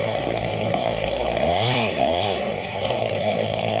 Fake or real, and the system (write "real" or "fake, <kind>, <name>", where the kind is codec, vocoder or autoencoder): fake, codec, SNAC